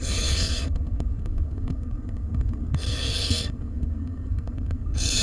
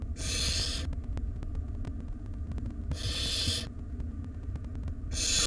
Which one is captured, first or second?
second